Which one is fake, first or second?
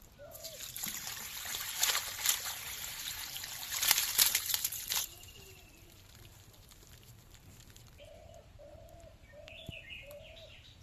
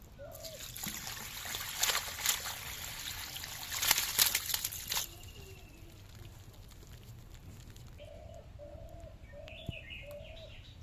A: first